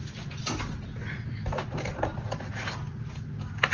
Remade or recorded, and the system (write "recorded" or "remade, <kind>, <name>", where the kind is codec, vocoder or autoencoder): recorded